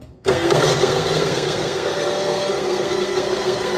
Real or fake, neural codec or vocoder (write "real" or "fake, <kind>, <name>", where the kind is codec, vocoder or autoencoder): fake, codec, SNAC